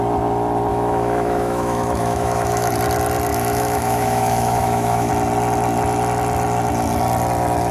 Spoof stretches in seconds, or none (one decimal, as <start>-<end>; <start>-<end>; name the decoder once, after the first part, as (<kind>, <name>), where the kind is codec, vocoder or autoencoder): 0.7-2.7 (autoencoder, DAC-VAE); 3.3-5.1